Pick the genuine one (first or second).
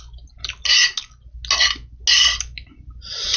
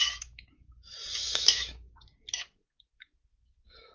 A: first